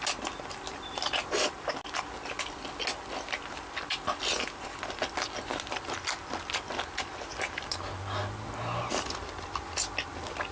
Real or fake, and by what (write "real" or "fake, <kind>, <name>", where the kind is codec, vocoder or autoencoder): real